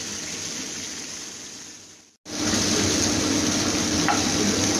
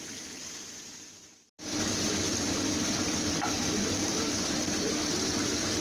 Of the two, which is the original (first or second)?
first